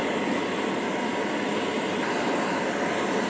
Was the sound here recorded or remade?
recorded